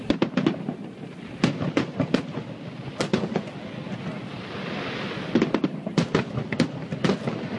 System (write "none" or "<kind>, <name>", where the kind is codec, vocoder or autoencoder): none